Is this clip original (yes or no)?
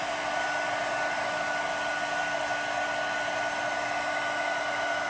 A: yes